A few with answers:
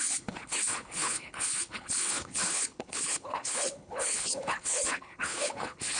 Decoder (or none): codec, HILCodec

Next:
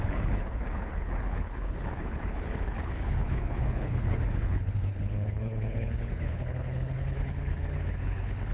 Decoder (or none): codec, HILCodec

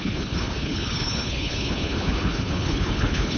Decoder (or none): codec, HILCodec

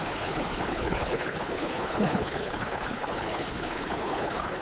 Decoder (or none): codec, HILCodec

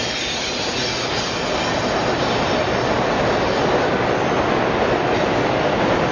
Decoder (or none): none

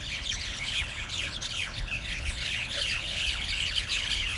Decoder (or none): codec, HILCodec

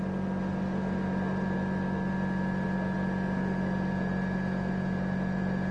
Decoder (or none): none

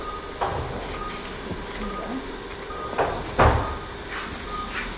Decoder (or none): none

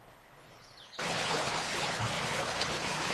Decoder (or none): codec, HILCodec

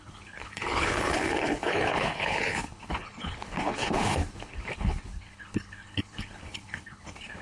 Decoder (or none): codec, HILCodec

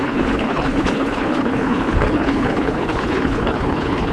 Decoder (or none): codec, HILCodec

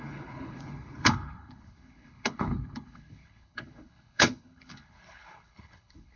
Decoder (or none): codec, HILCodec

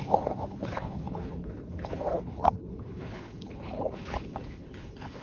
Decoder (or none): codec, HILCodec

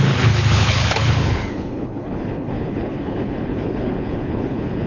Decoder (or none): codec, HILCodec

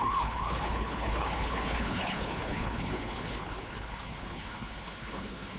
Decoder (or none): codec, HILCodec